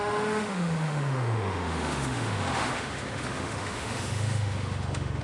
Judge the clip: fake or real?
fake